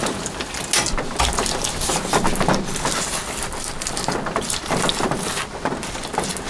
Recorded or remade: recorded